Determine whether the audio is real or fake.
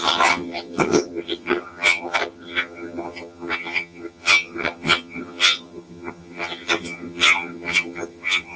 fake